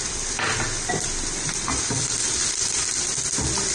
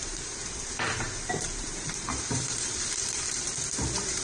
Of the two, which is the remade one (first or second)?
second